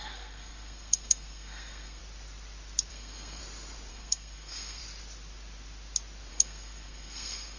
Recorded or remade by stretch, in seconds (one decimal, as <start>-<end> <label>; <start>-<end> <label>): 0.0-2.0 remade; 2.0-2.9 recorded; 2.9-3.4 remade; 3.4-3.9 recorded; 3.9-4.8 remade; 4.8-6.3 recorded; 6.3-7.6 remade